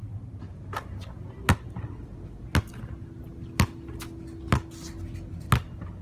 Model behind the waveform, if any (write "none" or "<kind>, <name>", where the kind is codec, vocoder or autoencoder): none